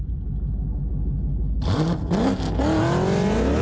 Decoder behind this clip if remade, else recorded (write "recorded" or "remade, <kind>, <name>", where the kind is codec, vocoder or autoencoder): recorded